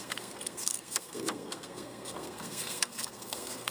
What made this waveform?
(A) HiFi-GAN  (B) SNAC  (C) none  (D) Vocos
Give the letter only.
B